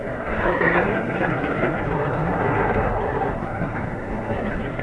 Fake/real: fake